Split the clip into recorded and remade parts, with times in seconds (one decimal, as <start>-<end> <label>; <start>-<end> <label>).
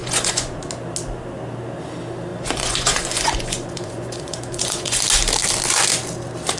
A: 0.0-0.6 remade; 0.6-2.3 recorded; 2.3-5.0 remade; 5.0-6.6 recorded